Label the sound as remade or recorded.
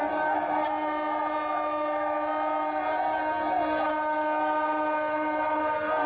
recorded